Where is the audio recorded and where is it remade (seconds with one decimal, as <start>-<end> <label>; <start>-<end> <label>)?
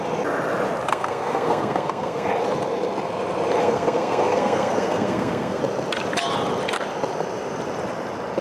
0.0-0.9 recorded; 0.9-2.3 remade; 2.3-3.6 recorded; 3.6-5.6 remade; 5.6-8.4 recorded